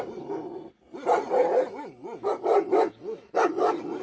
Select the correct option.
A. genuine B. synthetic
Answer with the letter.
A